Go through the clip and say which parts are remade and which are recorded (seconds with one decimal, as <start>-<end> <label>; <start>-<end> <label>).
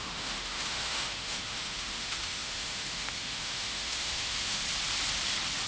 0.0-4.6 remade; 4.6-5.7 recorded